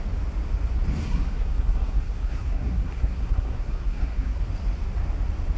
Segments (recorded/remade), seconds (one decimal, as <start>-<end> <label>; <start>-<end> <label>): 0.0-1.0 recorded; 1.0-4.4 remade; 4.4-5.6 recorded